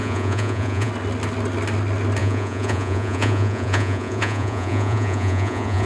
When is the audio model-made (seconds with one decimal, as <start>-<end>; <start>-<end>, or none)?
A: 0.0-0.9; 2.2-5.9